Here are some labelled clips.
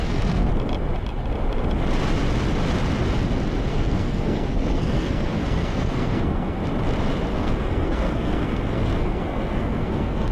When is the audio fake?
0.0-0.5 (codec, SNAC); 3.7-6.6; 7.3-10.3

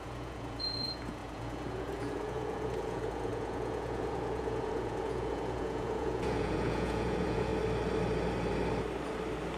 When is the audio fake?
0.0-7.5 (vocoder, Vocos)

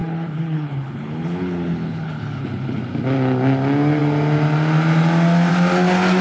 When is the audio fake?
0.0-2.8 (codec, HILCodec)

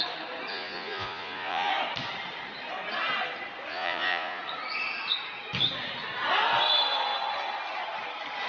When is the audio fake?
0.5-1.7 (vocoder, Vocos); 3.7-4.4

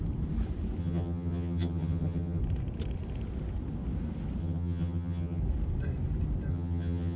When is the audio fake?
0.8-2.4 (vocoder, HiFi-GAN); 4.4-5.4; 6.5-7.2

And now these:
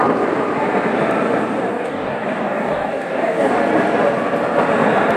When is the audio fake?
1.7-3.6 (codec, DAC)

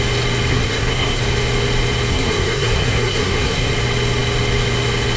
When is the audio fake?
0.5-1.2 (codec, SNAC); 2.1-3.7